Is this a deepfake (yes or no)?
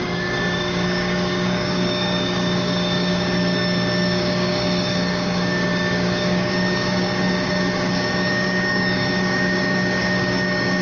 yes